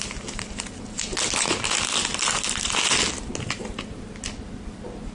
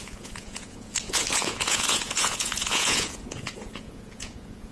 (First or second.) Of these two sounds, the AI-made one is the second